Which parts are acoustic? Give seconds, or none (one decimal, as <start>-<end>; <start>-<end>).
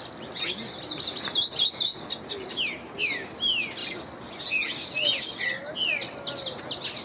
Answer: 0.0-7.0